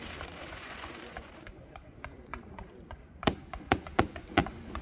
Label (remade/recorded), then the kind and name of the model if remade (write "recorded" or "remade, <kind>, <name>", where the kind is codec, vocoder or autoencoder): remade, vocoder, Vocos